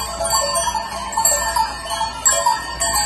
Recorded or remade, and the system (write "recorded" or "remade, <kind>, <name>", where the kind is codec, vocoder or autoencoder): recorded